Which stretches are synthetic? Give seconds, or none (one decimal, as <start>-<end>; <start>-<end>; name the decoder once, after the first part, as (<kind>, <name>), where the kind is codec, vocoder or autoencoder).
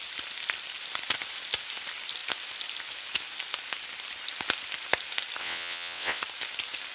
5.4-6.2 (vocoder, WaveNeXt)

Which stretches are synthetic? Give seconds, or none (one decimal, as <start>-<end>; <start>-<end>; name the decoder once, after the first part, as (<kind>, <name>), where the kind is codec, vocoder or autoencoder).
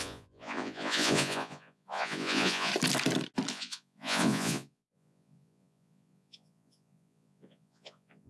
0.0-2.7 (vocoder, Vocos); 3.5-8.3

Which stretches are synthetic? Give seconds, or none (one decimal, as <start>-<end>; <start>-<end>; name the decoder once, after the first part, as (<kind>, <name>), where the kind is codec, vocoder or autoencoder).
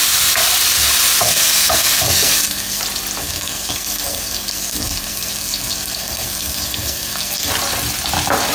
1.2-2.8 (codec, SNAC); 3.2-7.5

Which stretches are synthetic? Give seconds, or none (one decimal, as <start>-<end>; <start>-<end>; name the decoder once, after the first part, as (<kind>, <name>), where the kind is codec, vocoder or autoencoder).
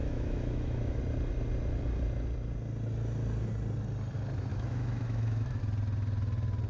0.0-1.0 (autoencoder, DAC-VAE); 4.5-5.6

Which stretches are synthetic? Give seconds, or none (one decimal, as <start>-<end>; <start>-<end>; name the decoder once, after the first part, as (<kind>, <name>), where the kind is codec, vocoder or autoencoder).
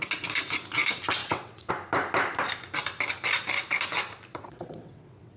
1.2-1.7 (vocoder, WaveNeXt); 4.3-5.4